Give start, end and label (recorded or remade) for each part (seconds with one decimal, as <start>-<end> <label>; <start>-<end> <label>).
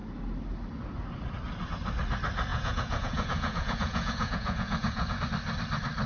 0.0-2.5 recorded; 2.5-5.2 remade; 5.2-6.1 recorded